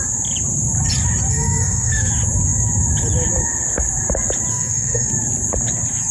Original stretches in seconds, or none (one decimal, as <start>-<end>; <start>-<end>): 0.0-1.3; 2.1-4.5; 5.1-6.1